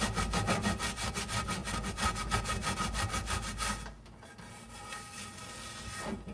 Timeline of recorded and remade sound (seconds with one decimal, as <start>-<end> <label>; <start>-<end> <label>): 0.0-6.3 recorded